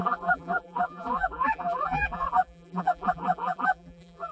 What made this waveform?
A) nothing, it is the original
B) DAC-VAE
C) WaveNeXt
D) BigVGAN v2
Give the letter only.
D